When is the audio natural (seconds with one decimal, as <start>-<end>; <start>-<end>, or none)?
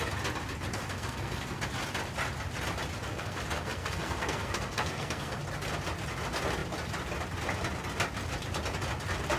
0.0-0.7; 1.6-3.1; 5.4-9.4